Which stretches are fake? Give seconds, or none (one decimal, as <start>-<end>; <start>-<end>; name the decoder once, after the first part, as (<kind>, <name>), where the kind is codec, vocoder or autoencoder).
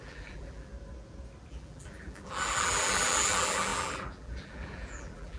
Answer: 0.0-0.7 (vocoder, BigVGAN v2); 1.5-5.4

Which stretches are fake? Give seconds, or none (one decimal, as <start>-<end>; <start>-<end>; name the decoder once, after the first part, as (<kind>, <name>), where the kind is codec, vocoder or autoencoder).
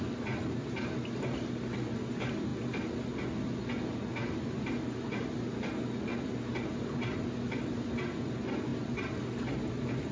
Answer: none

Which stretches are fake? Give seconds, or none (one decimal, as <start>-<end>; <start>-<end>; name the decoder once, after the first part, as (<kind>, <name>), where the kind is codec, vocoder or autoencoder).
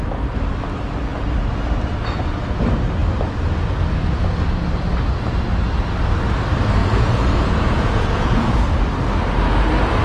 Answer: 6.8-8.6 (vocoder, Vocos)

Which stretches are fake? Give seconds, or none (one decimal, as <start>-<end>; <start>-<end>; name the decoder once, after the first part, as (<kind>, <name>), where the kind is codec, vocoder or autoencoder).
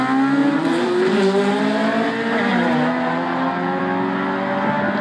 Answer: 0.4-1.6 (vocoder, BigVGAN v2); 2.5-3.8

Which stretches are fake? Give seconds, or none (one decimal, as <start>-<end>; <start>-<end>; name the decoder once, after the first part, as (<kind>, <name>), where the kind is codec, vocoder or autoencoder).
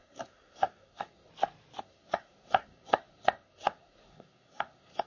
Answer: 0.0-1.3 (codec, SNAC); 1.8-5.1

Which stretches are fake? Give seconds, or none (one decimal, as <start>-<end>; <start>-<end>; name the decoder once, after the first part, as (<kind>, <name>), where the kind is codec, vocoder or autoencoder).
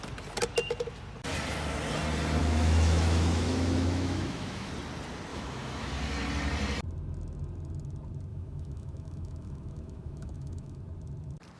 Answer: 2.4-4.7 (autoencoder, DAC-VAE); 5.3-5.9; 8.3-10.8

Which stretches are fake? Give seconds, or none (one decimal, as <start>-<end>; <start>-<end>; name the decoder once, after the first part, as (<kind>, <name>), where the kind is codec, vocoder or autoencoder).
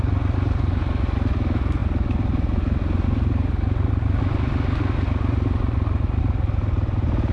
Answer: none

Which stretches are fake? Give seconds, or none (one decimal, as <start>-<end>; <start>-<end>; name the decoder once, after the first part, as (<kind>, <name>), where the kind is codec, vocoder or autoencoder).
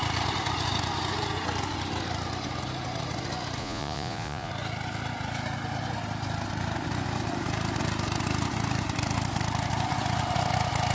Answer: 3.6-4.5 (vocoder, Vocos)